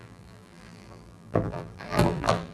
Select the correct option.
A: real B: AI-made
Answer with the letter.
B